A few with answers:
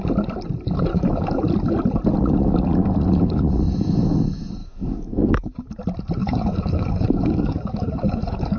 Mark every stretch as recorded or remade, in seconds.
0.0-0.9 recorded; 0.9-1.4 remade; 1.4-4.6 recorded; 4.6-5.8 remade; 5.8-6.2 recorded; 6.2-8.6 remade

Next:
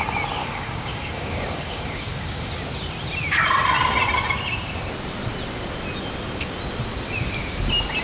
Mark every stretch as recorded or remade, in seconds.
0.0-0.4 recorded; 0.4-2.5 remade; 2.5-8.0 recorded

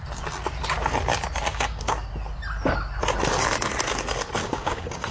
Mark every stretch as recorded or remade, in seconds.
0.0-1.5 recorded; 1.5-2.1 remade; 2.1-4.4 recorded; 4.4-5.1 remade